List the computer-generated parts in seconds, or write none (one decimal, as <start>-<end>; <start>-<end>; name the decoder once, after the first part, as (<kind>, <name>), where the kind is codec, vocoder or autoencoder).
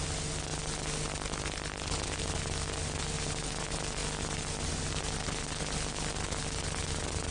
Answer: none